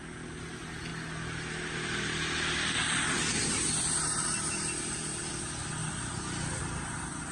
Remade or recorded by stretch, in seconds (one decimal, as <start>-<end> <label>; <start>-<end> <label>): 0.0-7.3 recorded